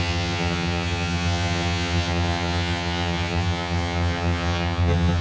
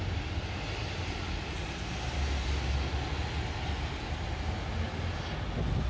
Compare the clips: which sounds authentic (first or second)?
second